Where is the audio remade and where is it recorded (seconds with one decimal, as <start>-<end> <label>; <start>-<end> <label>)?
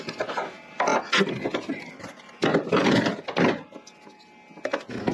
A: 0.0-2.5 recorded; 2.5-3.2 remade; 3.2-5.1 recorded